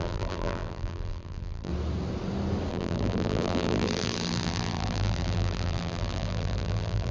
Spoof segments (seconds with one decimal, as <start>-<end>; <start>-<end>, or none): 0.0-1.7; 2.7-7.1